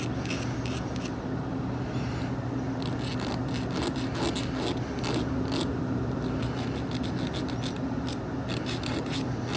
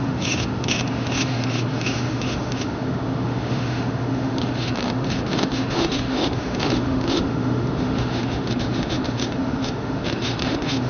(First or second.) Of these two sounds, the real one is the first